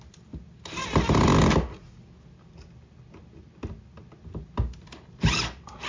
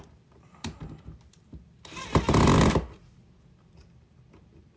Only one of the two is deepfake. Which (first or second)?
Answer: second